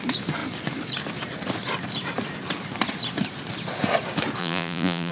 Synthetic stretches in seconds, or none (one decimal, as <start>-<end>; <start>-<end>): 4.4-5.1